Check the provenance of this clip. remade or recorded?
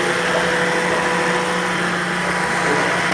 recorded